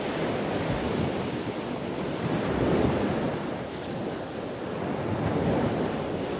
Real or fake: real